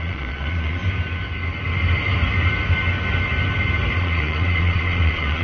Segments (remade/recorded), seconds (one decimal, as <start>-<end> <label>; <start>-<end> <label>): 0.0-0.8 remade; 0.8-4.0 recorded; 4.0-5.4 remade